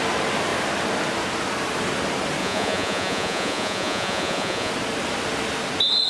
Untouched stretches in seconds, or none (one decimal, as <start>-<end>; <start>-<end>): 0.0-2.4; 4.7-6.1